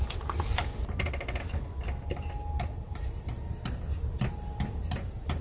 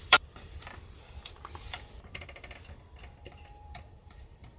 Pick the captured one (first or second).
first